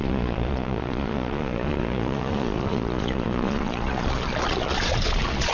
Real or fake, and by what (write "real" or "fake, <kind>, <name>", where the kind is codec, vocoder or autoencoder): fake, vocoder, Vocos